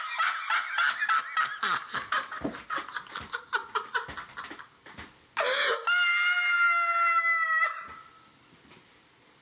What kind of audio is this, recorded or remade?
recorded